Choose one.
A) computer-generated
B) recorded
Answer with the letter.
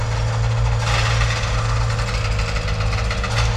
B